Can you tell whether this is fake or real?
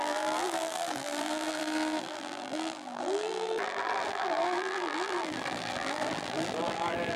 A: fake